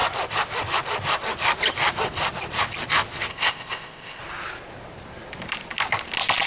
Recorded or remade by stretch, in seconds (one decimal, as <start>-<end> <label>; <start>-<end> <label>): 0.0-3.3 recorded; 3.3-4.2 remade; 4.2-6.5 recorded

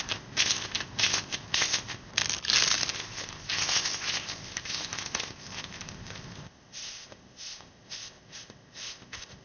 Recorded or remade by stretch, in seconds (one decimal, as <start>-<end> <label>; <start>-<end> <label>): 0.0-2.1 remade; 2.1-2.9 recorded; 2.9-9.4 remade

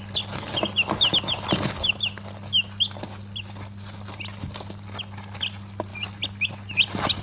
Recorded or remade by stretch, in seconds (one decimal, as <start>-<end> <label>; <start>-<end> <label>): 0.0-7.2 recorded

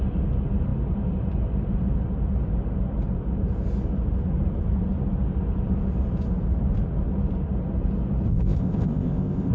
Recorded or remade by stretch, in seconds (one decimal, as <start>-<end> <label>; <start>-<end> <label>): 0.0-8.3 recorded; 8.3-9.5 remade